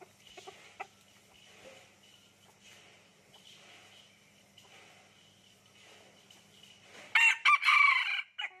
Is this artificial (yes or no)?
no